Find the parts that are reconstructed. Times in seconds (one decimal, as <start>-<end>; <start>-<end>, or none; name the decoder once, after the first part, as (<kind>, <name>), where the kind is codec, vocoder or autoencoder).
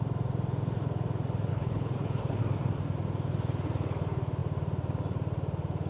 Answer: 1.5-2.4 (codec, HILCodec)